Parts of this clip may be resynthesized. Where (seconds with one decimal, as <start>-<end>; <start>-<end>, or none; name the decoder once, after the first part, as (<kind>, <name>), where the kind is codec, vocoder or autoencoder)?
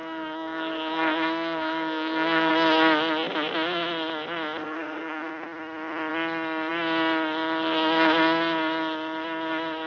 0.0-2.5 (codec, SNAC); 4.6-5.3